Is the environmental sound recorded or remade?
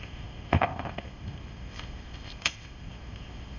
remade